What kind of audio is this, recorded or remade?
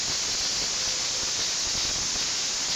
recorded